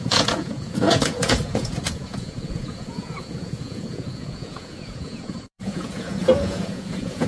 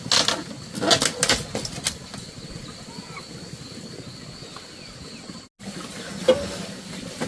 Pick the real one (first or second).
second